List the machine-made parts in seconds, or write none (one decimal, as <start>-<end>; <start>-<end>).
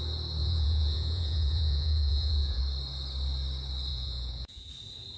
0.4-2.6; 3.9-4.7